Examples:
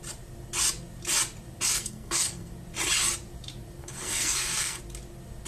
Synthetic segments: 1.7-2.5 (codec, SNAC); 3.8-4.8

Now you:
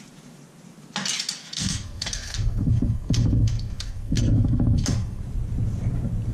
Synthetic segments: 1.4-5.2 (codec, SNAC)

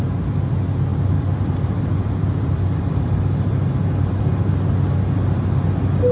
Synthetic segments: 0.9-4.5 (vocoder, BigVGAN v2)

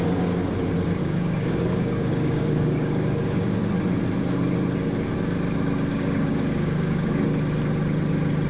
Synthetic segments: 1.0-3.6 (codec, DAC); 5.9-7.3